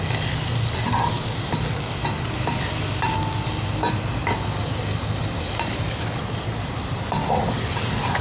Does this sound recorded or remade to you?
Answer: recorded